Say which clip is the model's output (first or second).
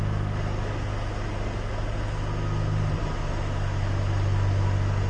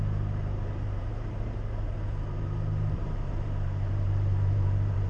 second